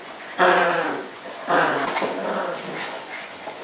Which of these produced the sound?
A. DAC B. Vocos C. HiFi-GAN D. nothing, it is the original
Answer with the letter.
B